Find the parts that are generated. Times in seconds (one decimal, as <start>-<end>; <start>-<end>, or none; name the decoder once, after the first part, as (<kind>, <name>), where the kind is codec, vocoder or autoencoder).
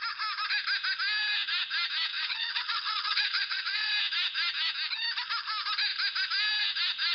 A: 2.1-3.9 (vocoder, WaveNeXt)